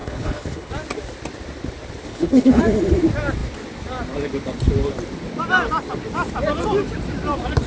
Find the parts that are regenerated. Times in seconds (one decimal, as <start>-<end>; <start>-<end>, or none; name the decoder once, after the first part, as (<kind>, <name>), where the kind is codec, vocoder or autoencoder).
0.0-0.7 (codec, HILCodec); 2.1-2.6